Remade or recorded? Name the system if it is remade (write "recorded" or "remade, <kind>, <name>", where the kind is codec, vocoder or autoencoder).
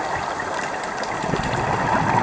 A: recorded